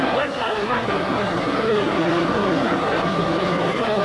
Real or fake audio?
fake